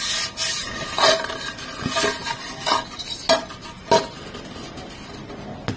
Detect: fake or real real